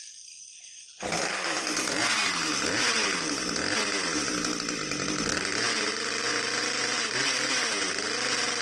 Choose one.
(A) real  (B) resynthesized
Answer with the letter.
A